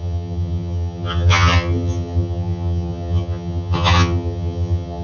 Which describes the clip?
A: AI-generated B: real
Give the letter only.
A